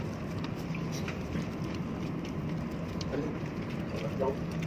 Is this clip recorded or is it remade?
recorded